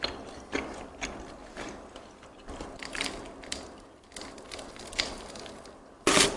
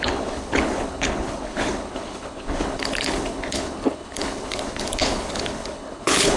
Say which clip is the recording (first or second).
first